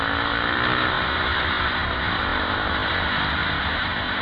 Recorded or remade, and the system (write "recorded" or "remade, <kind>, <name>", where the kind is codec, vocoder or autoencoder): recorded